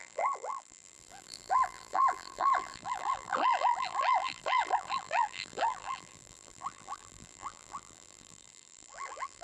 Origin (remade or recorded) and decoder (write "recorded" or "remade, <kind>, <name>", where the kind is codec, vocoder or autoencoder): remade, vocoder, BigVGAN v2